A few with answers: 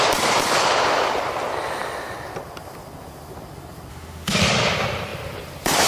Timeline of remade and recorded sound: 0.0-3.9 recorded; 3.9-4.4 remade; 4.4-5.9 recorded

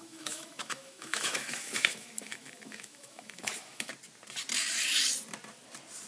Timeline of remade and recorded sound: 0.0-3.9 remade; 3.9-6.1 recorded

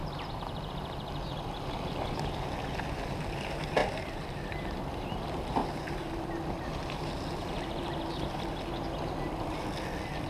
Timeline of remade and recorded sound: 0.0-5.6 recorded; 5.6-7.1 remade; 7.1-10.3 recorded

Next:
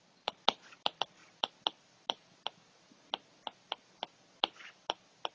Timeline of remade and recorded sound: 0.0-5.3 recorded

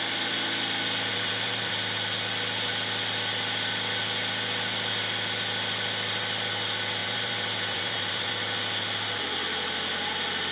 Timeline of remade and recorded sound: 0.0-1.1 recorded; 1.1-1.7 remade; 1.7-7.0 recorded; 7.0-8.3 remade; 8.3-10.5 recorded